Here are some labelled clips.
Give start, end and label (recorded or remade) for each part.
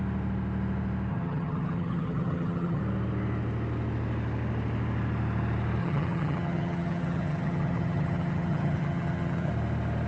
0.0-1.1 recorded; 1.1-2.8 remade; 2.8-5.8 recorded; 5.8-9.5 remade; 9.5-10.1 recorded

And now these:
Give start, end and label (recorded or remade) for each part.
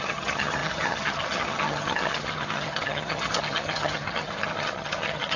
0.0-5.4 remade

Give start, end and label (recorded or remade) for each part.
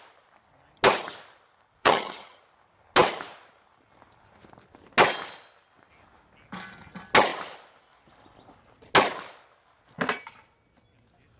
0.0-1.8 recorded; 1.8-2.4 remade; 2.4-11.4 recorded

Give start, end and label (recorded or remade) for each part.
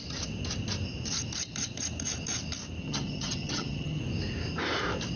0.0-2.8 recorded; 2.8-4.0 remade; 4.0-5.2 recorded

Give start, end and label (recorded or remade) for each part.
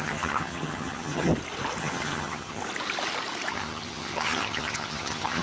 0.0-1.3 remade; 1.3-1.8 recorded; 1.8-2.6 remade; 2.6-3.5 recorded; 3.5-5.4 remade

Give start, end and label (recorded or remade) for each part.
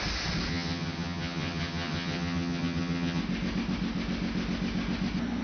0.0-0.5 recorded; 0.5-3.2 remade; 3.2-5.4 recorded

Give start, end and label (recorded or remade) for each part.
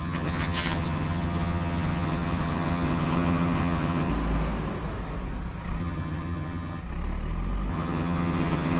0.0-4.1 remade; 4.1-5.8 recorded; 5.8-6.8 remade; 6.8-7.7 recorded; 7.7-8.8 remade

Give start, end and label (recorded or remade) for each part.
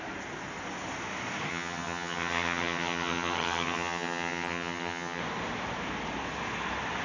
0.0-1.5 recorded; 1.5-5.2 remade; 5.2-7.0 recorded